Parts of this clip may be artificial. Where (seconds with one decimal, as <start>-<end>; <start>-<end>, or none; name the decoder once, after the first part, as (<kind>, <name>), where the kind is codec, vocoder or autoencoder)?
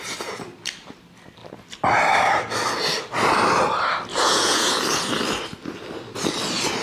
4.1-4.7 (vocoder, Vocos)